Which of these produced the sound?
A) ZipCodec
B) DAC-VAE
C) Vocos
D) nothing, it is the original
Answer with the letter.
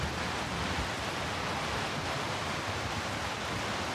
D